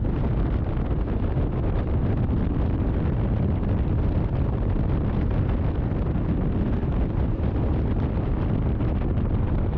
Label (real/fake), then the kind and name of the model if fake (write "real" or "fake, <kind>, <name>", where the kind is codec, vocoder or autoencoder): real